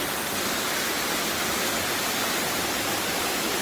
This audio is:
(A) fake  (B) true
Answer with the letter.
B